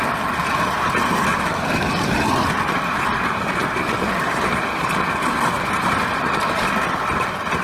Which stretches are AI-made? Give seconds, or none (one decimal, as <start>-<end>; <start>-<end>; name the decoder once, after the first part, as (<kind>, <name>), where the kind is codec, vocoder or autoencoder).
1.3-2.3 (vocoder, BigVGAN v2); 3.6-6.3